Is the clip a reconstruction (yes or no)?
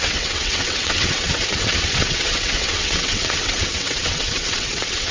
yes